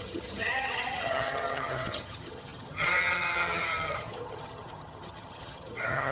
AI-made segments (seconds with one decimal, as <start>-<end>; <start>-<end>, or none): 0.0-6.1